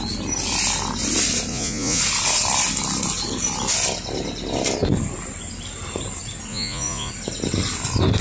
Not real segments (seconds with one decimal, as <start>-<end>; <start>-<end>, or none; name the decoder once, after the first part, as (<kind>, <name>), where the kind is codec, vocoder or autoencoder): 1.5-2.0 (vocoder, Vocos); 6.5-7.1